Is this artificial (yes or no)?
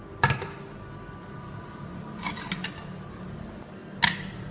no